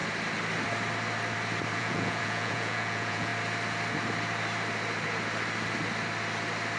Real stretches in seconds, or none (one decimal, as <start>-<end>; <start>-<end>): 0.0-1.7; 3.3-6.8